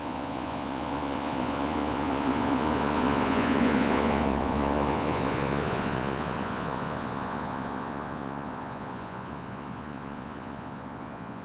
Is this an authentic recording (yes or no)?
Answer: no